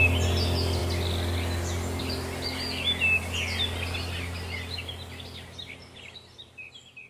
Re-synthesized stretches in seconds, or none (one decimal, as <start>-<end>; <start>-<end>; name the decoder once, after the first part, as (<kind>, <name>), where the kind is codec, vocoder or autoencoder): none

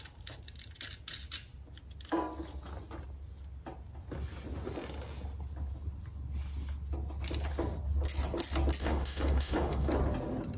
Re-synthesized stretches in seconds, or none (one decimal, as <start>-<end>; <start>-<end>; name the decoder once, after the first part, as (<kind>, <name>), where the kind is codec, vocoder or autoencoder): 8.8-9.9 (autoencoder, DAC-VAE)

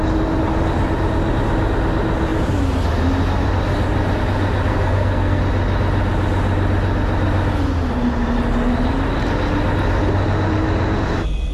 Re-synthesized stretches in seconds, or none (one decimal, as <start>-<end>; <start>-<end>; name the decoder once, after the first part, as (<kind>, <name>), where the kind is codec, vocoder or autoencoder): 4.7-5.4 (codec, SNAC)